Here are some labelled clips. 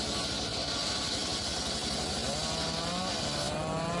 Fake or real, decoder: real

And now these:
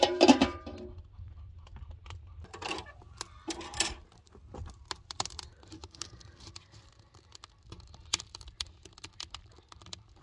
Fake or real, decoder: real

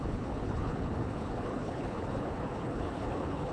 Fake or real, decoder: fake, codec, HILCodec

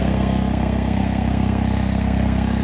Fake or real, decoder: fake, codec, SNAC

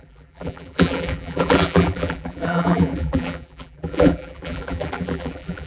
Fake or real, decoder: fake, vocoder, BigVGAN v2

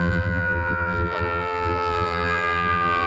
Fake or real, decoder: fake, vocoder, BigVGAN v2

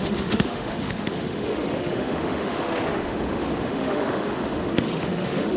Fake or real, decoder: fake, autoencoder, DAC-VAE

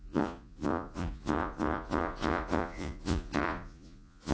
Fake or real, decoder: fake, vocoder, Vocos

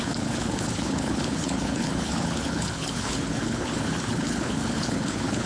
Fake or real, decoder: fake, codec, HILCodec